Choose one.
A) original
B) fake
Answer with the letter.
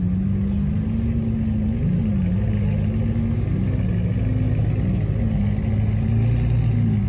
A